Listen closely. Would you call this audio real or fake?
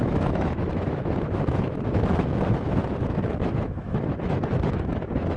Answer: fake